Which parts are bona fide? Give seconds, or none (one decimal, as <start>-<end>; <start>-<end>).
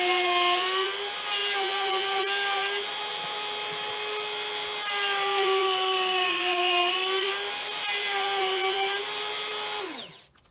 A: 0.0-5.6; 7.3-10.5